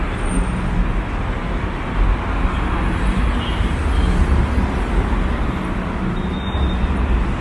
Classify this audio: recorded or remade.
recorded